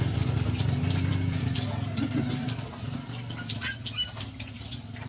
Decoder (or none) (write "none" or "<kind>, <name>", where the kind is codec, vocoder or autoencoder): none